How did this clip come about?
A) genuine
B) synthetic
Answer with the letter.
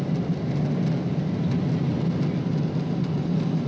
A